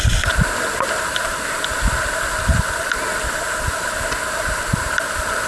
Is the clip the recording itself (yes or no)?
yes